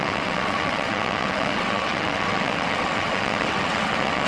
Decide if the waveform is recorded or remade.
remade